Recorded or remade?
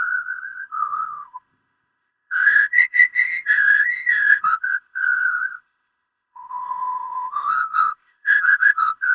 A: remade